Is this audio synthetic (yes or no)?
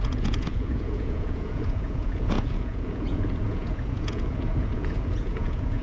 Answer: yes